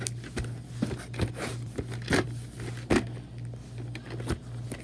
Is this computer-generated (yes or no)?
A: no